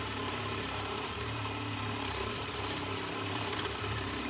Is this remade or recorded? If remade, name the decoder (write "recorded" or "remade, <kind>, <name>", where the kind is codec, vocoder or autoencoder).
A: remade, vocoder, BigVGAN v2